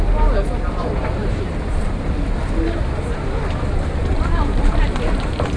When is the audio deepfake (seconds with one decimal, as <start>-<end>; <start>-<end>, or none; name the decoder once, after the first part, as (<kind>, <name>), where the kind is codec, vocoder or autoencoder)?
1.2-2.1 (vocoder, BigVGAN v2); 4.0-5.6

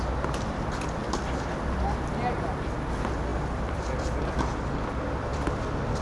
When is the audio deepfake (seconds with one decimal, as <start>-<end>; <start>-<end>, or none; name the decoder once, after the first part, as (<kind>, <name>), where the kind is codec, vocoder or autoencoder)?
3.3-4.4 (vocoder, BigVGAN v2); 5.3-6.0

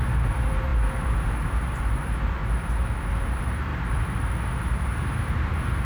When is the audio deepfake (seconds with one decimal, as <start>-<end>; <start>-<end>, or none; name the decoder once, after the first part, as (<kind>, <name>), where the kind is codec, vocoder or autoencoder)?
0.0-2.4 (vocoder, BigVGAN v2); 3.1-3.7; 4.7-5.8

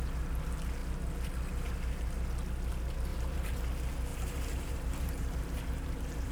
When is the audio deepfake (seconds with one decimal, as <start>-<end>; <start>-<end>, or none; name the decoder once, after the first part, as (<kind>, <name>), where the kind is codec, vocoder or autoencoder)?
3.1-3.6 (vocoder, BigVGAN v2); 4.1-6.3

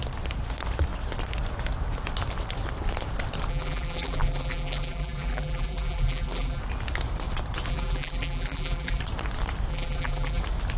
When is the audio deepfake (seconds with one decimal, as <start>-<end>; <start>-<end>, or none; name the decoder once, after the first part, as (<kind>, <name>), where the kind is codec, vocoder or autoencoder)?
3.5-6.6 (vocoder, BigVGAN v2); 7.7-9.0; 9.7-10.4

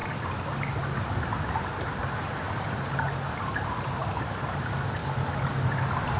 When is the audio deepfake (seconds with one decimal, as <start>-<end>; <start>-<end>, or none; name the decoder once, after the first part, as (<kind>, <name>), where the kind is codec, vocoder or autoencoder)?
1.4-2.0 (vocoder, BigVGAN v2); 3.4-5.0; 5.5-6.2

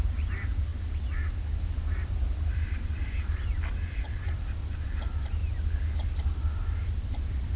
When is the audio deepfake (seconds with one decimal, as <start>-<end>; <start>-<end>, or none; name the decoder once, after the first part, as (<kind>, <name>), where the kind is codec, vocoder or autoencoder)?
0.0-0.7 (vocoder, BigVGAN v2); 1.6-5.4; 6.1-7.6